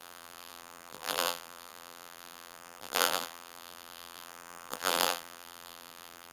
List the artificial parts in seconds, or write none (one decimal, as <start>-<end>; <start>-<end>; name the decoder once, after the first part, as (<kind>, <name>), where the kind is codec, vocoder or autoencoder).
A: 0.0-6.3 (vocoder, BigVGAN v2)